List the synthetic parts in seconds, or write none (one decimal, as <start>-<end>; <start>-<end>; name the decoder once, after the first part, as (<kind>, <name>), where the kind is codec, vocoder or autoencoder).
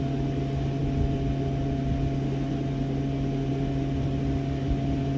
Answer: none